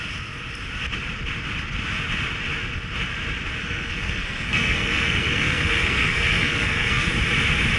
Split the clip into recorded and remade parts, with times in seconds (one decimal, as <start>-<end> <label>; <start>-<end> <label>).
0.0-3.6 recorded; 3.6-7.1 remade; 7.1-7.8 recorded